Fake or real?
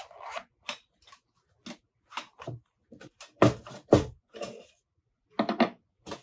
real